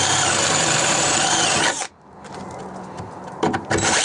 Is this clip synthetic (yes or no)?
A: no